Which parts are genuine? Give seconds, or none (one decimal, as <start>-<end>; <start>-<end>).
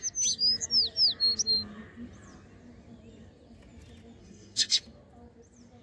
0.0-4.2; 4.8-5.8